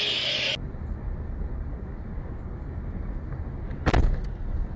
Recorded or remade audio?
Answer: recorded